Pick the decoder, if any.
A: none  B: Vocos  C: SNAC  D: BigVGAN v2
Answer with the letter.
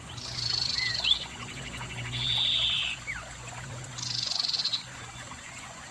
B